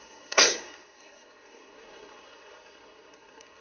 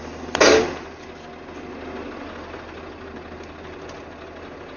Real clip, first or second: second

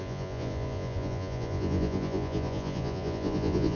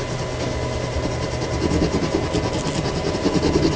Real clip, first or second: second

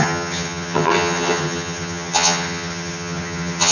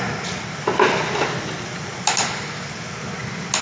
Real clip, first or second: second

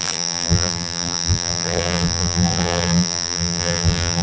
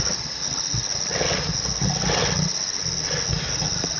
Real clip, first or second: second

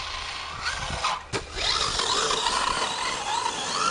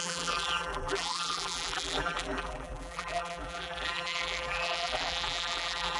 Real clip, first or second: first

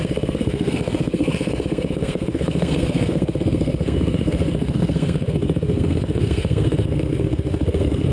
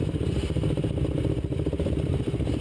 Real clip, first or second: second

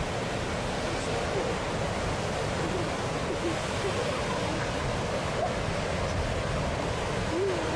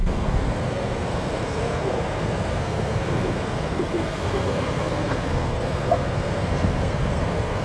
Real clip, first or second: first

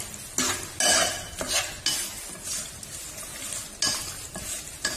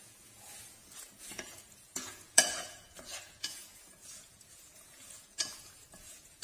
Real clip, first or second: first